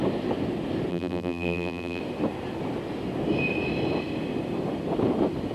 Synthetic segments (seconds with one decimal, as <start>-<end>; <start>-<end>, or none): 0.9-2.0